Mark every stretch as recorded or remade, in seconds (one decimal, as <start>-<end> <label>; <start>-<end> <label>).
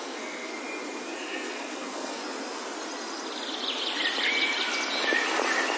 0.0-0.5 remade; 0.5-1.2 recorded; 1.2-2.2 remade; 2.2-5.8 recorded